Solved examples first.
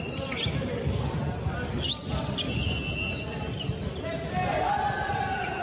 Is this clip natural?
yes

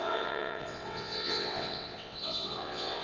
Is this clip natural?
no